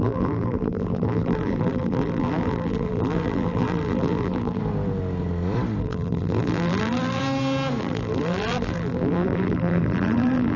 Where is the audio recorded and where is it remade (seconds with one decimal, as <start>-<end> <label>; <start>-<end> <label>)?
0.0-4.6 remade; 4.6-5.8 recorded; 5.8-7.2 remade; 7.2-7.8 recorded; 7.8-10.6 remade